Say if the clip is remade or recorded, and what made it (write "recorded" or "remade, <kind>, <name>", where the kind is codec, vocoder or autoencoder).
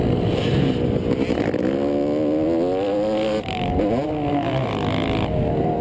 recorded